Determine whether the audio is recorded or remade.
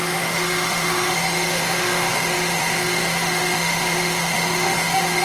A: remade